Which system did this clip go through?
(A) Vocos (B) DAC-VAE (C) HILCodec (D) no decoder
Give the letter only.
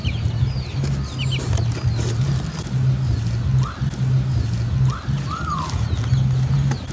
D